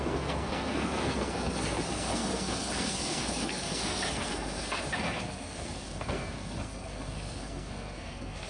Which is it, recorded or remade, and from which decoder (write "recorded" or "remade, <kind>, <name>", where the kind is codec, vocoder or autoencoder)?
remade, codec, SNAC